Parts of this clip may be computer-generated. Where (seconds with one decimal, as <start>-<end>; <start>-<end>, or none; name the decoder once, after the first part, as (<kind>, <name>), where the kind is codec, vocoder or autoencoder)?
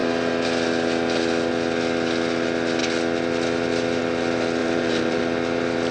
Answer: 4.6-5.2 (vocoder, BigVGAN v2)